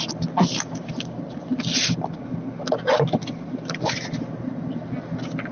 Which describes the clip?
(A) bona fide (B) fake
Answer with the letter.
A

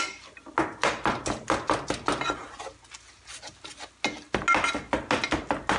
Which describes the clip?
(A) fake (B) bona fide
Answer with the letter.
B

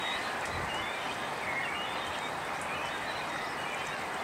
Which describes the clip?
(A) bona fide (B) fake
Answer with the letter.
A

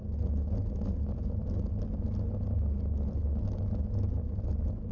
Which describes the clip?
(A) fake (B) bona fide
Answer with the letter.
B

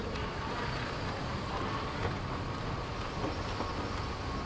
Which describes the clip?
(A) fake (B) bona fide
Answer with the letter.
B